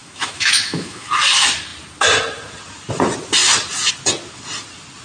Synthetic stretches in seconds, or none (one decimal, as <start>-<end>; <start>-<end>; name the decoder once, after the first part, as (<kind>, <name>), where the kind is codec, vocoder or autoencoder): 0.0-1.1 (autoencoder, DAC-VAE)